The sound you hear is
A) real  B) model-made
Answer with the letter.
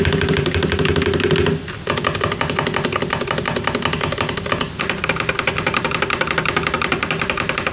A